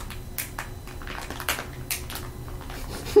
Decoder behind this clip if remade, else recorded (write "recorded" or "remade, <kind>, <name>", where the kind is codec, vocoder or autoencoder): recorded